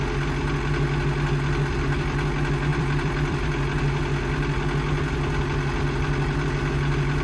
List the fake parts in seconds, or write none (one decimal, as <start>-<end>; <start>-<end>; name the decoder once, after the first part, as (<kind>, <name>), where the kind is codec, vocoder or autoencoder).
2.7-3.8 (vocoder, BigVGAN v2)